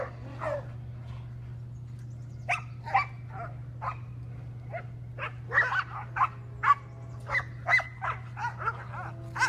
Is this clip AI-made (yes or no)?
no